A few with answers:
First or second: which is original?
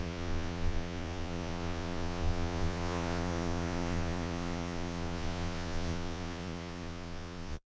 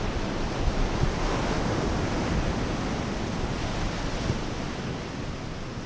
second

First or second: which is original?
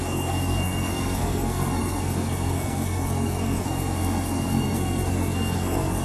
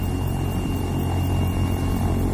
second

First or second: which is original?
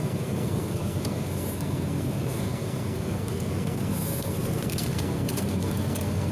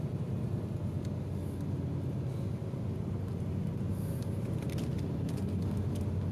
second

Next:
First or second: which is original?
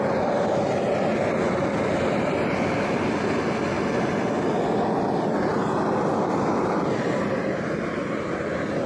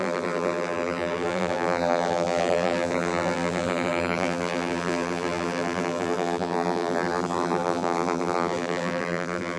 first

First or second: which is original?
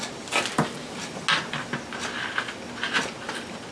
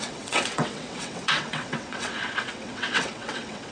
first